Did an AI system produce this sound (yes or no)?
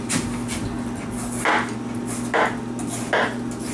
no